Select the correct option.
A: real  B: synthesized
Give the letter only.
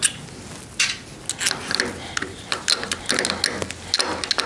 A